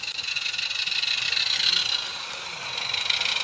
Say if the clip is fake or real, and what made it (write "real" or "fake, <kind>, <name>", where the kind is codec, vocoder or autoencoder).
real